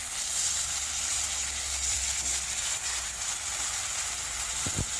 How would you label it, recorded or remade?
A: recorded